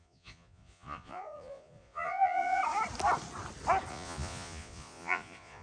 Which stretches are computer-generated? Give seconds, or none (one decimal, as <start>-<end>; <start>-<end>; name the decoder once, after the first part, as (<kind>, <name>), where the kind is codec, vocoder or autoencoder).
0.0-2.6 (vocoder, Vocos); 3.9-5.6